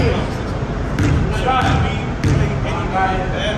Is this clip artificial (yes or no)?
no